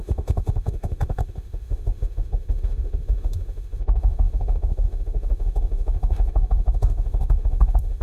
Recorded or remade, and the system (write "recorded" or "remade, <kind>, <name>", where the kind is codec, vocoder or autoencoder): remade, autoencoder, DAC-VAE